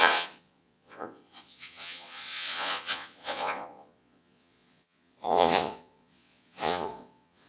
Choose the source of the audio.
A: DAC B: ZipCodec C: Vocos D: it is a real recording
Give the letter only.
C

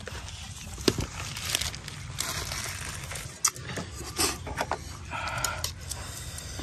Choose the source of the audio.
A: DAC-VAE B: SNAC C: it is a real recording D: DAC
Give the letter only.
C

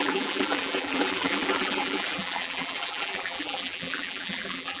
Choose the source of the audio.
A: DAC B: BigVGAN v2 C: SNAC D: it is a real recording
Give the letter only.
B